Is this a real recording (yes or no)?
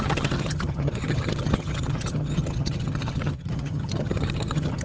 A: no